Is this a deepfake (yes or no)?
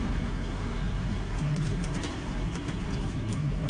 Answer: yes